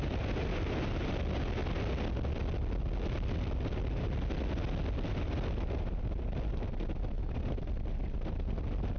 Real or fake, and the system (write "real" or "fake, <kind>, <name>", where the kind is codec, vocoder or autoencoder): real